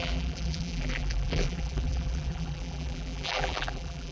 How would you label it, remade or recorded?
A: remade